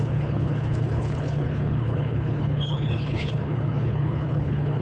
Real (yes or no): no